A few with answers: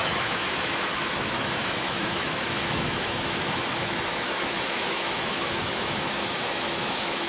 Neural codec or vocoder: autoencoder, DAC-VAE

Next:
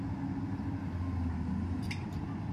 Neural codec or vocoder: none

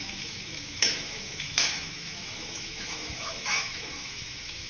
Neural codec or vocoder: autoencoder, DAC-VAE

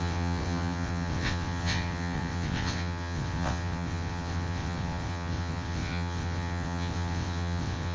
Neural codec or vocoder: vocoder, WaveNeXt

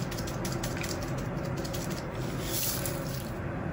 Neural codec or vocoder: none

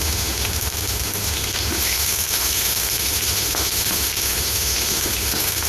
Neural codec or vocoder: autoencoder, DAC-VAE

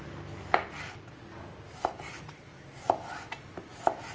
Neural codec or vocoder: none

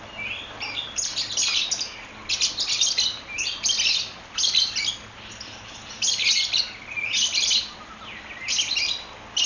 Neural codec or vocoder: none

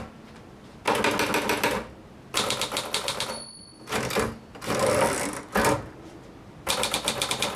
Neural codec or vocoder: none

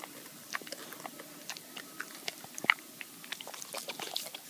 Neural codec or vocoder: none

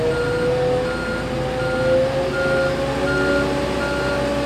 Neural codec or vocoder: none